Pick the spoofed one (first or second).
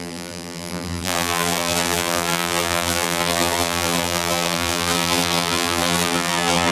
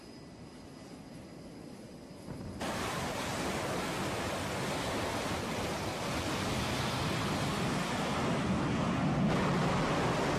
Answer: first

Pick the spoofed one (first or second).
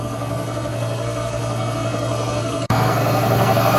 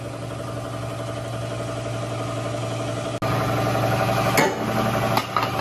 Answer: first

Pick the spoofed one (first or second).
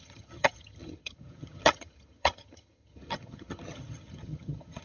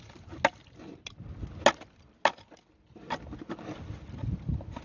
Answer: first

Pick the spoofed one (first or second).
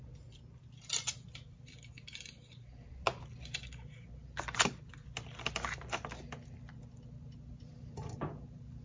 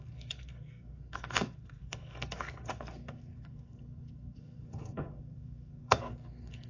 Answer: second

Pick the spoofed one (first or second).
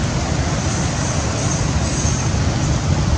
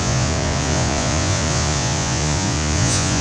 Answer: second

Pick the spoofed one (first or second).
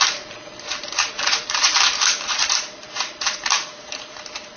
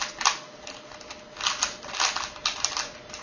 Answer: first